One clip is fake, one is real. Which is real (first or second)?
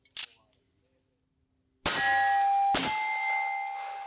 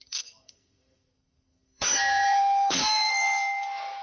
first